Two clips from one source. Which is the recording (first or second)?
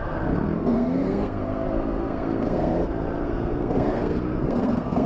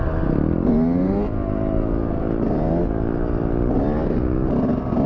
second